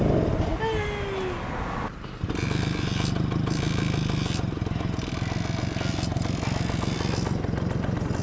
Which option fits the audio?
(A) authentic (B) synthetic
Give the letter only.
A